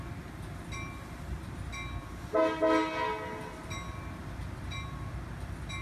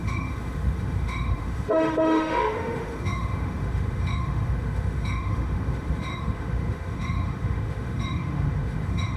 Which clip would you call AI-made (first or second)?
second